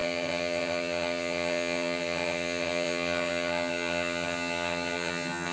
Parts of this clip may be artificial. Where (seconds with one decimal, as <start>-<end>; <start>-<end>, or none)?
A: 0.0-5.5